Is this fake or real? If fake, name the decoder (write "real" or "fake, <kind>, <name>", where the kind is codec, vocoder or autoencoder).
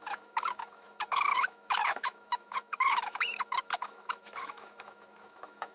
fake, autoencoder, DAC-VAE